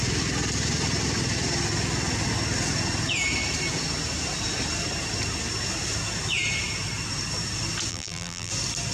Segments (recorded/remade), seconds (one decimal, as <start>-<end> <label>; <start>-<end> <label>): 0.0-7.9 recorded; 7.9-8.5 remade; 8.5-8.9 recorded